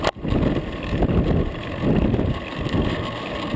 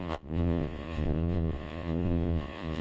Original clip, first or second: first